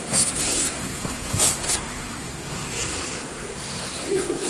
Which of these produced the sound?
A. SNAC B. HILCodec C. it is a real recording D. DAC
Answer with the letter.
A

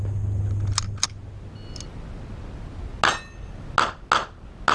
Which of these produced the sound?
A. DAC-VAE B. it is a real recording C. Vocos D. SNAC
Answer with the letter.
B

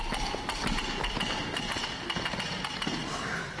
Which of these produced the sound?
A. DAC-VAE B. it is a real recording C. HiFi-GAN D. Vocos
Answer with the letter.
B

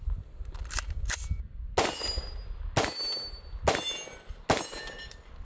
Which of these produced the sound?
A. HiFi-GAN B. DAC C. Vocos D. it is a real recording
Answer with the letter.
D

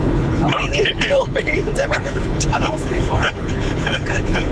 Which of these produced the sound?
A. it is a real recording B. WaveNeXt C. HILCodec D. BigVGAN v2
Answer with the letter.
C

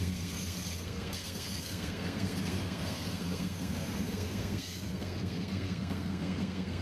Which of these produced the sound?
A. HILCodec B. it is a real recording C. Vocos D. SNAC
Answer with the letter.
D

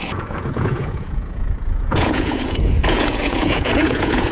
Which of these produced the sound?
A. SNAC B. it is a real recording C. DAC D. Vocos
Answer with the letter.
D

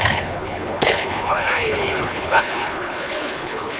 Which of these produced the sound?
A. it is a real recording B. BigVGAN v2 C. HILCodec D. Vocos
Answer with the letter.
C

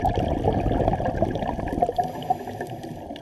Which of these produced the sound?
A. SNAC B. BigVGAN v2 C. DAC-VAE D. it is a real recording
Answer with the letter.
D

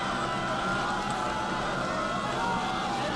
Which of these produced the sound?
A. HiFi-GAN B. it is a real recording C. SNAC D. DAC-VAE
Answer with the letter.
B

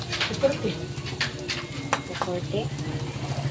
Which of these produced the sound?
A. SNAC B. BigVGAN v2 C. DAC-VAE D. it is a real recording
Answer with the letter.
D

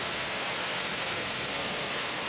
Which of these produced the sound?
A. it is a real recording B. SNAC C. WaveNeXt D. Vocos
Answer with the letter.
B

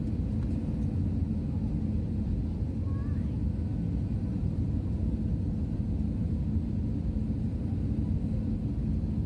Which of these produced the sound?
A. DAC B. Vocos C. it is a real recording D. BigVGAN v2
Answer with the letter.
C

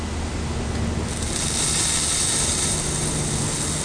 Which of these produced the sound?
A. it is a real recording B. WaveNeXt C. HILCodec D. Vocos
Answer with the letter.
A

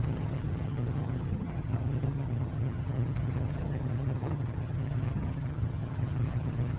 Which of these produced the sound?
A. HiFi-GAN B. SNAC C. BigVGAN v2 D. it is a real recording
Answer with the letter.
A